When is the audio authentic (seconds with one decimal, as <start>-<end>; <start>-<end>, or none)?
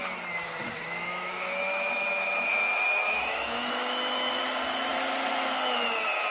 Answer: 0.0-0.6; 4.4-6.3